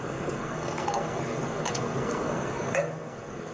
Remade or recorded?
remade